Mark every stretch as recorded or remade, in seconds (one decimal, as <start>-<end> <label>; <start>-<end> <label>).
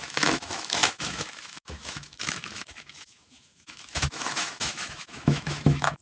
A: 0.0-6.0 remade